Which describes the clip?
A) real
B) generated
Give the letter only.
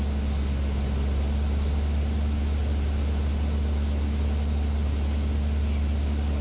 A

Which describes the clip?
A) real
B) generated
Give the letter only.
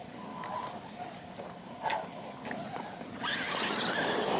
A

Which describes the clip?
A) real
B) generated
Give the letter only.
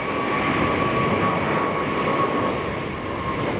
A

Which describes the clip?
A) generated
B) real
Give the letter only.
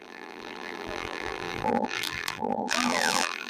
A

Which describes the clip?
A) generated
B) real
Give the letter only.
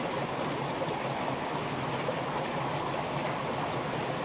B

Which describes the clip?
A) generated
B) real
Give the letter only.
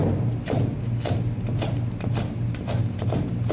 B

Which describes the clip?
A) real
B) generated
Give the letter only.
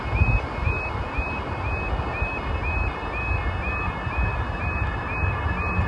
A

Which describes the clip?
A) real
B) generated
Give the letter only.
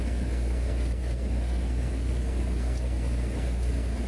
B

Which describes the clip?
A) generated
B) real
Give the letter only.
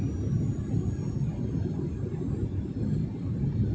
B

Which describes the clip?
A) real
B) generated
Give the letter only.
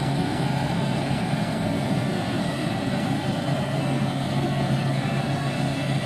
B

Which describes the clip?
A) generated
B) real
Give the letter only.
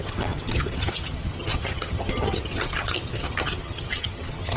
A